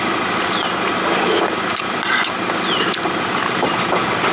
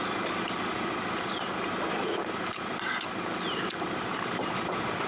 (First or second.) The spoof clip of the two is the second